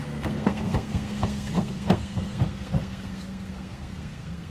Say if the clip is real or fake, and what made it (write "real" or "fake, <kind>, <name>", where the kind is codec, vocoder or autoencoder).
fake, codec, SNAC